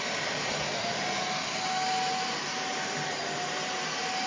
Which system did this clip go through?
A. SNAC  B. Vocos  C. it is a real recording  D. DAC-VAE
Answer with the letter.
C